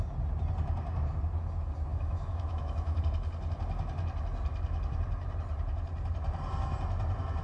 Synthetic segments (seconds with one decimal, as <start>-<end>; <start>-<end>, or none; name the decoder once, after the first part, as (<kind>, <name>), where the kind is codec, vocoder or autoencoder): 1.9-3.0 (autoencoder, DAC-VAE)